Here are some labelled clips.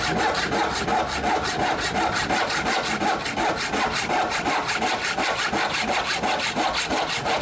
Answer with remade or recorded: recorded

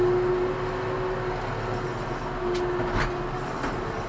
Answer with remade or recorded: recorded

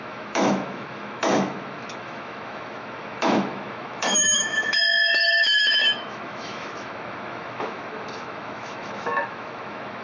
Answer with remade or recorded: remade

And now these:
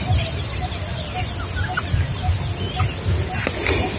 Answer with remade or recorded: recorded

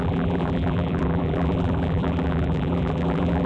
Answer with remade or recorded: remade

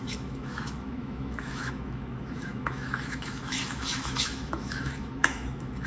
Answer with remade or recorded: remade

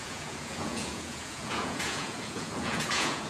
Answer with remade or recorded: remade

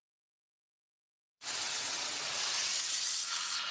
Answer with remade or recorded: remade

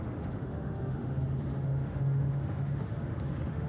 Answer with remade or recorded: remade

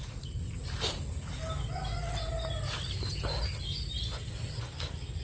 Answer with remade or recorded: recorded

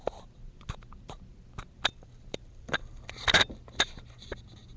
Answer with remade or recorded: recorded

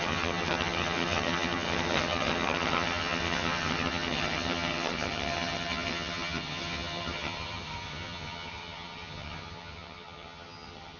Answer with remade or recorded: remade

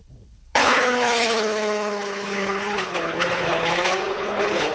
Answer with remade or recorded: remade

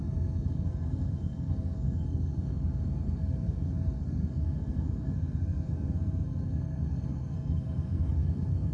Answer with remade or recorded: remade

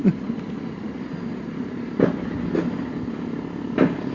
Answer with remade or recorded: recorded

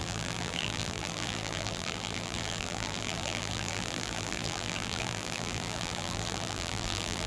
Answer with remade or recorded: remade